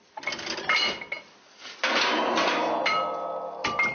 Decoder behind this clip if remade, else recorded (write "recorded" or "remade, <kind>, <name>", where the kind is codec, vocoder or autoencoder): recorded